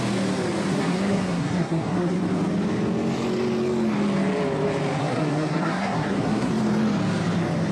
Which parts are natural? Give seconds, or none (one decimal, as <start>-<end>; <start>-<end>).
0.0-0.7; 2.2-5.0; 6.5-7.7

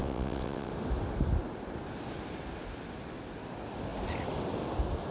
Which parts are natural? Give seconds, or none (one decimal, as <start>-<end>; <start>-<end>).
0.7-5.1

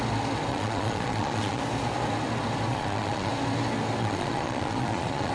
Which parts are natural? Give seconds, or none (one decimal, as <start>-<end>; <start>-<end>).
0.0-0.5; 1.6-2.7; 3.3-4.0

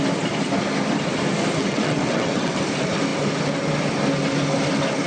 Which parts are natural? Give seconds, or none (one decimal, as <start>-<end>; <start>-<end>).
0.0-1.6; 2.6-5.1

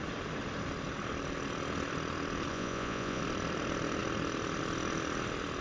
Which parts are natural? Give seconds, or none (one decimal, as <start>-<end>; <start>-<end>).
0.0-2.5; 3.2-5.6

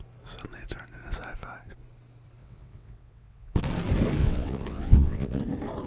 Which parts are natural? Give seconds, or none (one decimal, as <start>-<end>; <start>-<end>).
0.0-2.4; 3.6-4.2; 5.4-5.9

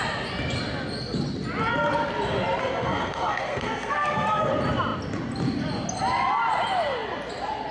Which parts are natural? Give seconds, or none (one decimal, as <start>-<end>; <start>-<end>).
0.0-2.6; 4.5-7.7

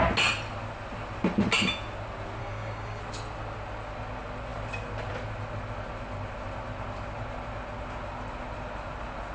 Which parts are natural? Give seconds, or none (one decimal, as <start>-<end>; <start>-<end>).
0.0-2.4; 3.0-9.3